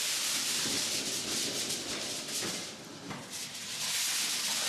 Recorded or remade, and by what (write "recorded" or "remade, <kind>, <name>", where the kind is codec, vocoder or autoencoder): recorded